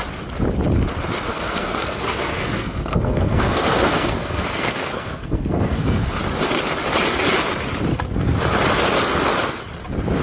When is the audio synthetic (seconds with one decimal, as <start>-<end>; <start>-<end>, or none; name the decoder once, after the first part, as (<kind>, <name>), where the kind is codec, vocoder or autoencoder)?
1.3-6.1 (codec, SNAC)